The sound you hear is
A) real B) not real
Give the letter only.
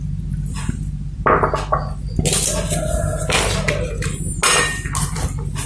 A